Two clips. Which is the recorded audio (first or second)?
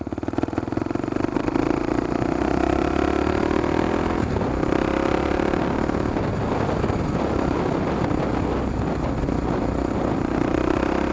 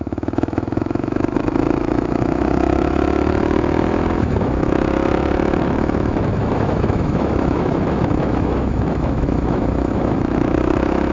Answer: first